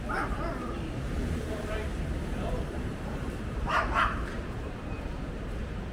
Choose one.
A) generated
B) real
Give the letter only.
A